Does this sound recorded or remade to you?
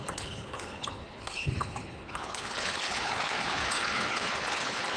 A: remade